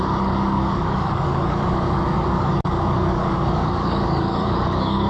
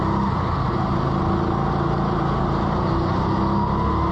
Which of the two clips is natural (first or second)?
second